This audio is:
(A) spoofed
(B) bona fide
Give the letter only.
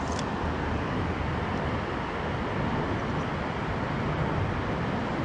B